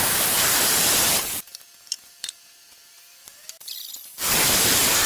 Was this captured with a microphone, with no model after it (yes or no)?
no